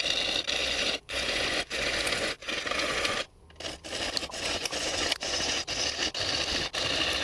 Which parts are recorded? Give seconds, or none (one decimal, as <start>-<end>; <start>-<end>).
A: 0.0-0.6; 3.4-4.2; 5.8-7.2